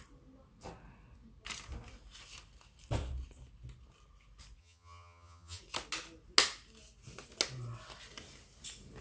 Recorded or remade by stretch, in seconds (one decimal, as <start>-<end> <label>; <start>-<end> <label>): 0.0-4.6 recorded; 4.6-5.6 remade; 5.6-9.0 recorded

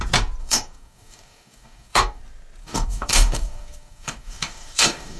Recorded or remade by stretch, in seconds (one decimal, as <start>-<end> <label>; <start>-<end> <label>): 0.0-0.4 recorded; 0.4-2.2 remade; 2.2-2.6 recorded; 2.6-5.2 remade

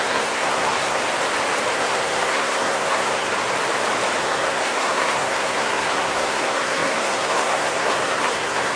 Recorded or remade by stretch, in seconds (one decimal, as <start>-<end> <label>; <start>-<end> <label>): 0.0-1.0 remade; 1.0-1.7 recorded; 1.7-3.3 remade; 3.3-4.2 recorded; 4.2-8.8 remade

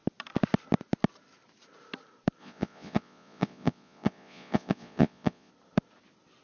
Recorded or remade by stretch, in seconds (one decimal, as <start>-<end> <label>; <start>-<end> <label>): 0.0-2.4 recorded; 2.4-5.5 remade; 5.5-6.4 recorded

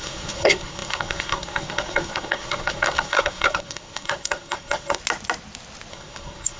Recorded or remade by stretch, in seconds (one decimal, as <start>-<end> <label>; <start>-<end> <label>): 0.0-5.0 remade; 5.0-5.9 recorded; 5.9-6.6 remade

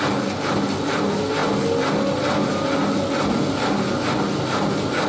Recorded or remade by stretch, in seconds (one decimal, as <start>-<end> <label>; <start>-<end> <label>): 0.0-5.1 recorded

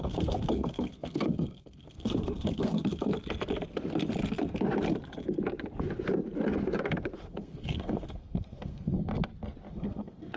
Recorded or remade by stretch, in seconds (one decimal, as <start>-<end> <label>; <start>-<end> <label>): 0.0-3.1 remade; 3.1-7.2 recorded; 7.2-9.1 remade; 9.1-9.7 recorded; 9.7-10.4 remade